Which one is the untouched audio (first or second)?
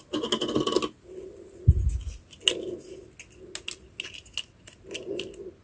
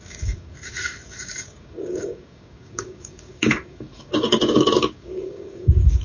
first